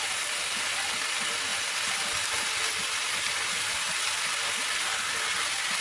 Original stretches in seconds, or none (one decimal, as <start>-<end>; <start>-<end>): 0.0-5.8